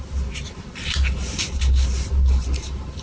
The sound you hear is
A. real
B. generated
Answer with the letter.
A